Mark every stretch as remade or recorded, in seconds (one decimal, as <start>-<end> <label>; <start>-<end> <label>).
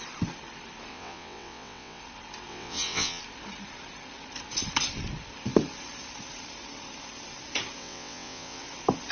0.0-0.9 recorded; 0.9-2.0 remade; 2.0-2.5 recorded; 2.5-3.2 remade; 3.2-7.8 recorded; 7.8-8.6 remade; 8.6-9.1 recorded